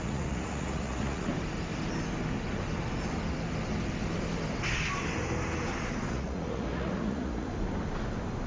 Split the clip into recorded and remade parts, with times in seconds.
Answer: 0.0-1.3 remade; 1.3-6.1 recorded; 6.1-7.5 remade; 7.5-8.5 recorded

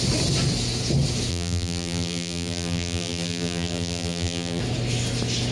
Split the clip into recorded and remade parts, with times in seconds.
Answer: 0.0-1.3 recorded; 1.3-4.6 remade; 4.6-5.5 recorded

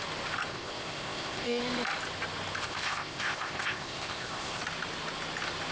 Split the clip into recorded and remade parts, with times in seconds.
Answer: 0.0-0.5 recorded; 0.5-1.6 remade; 1.6-2.6 recorded; 2.6-4.6 remade; 4.6-5.7 recorded

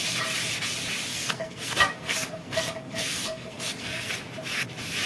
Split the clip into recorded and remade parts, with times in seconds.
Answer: 0.0-1.1 recorded; 1.1-4.1 remade; 4.1-5.1 recorded